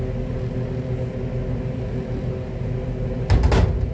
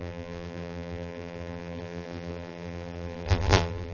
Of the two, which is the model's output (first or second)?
second